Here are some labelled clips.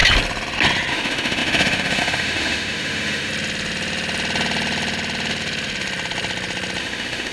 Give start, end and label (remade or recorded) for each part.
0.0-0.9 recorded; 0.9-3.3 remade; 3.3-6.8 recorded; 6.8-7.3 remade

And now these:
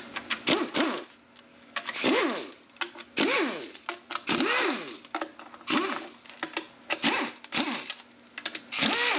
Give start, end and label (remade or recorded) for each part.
0.0-1.5 recorded; 1.5-2.2 remade; 2.2-9.2 recorded

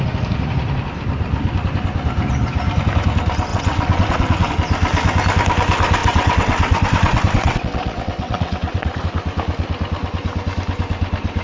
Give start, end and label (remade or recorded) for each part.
0.0-3.5 recorded; 3.5-4.5 remade; 4.5-6.0 recorded; 6.0-9.0 remade; 9.0-11.4 recorded

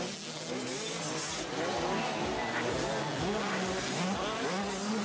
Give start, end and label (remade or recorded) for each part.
0.0-5.0 recorded

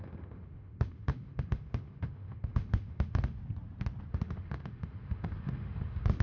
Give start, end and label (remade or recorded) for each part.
0.0-3.4 remade; 3.4-4.1 recorded; 4.1-6.2 remade

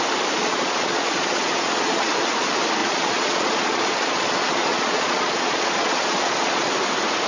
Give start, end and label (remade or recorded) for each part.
0.0-0.4 recorded; 0.4-2.1 remade; 2.1-2.8 recorded; 2.8-6.7 remade; 6.7-7.3 recorded

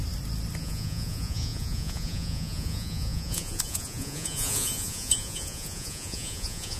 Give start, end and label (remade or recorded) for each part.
0.0-0.6 recorded; 0.6-6.8 remade